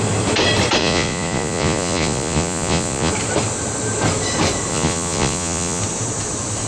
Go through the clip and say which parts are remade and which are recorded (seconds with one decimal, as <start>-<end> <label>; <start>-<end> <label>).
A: 0.0-0.8 recorded; 0.8-3.1 remade; 3.1-4.7 recorded; 4.7-5.8 remade; 5.8-6.7 recorded